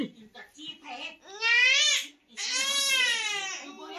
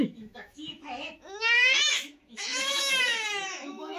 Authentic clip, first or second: first